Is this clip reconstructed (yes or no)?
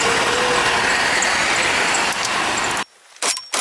no